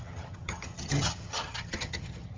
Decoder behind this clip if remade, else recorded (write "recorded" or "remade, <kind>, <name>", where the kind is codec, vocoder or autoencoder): remade, vocoder, HiFi-GAN